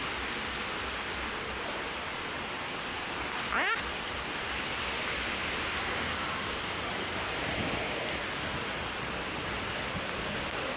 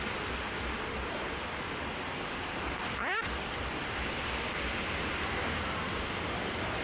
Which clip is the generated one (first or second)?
second